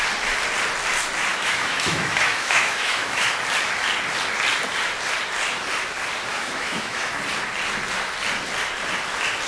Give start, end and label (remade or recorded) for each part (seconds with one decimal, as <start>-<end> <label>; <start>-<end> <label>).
0.0-1.3 recorded; 1.3-3.3 remade; 3.3-6.3 recorded; 6.3-7.1 remade; 7.1-9.5 recorded